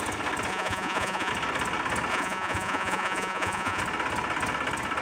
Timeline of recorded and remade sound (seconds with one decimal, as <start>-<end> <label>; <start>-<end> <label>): 0.0-0.5 recorded; 0.5-1.3 remade; 1.3-2.1 recorded; 2.1-3.8 remade; 3.8-5.0 recorded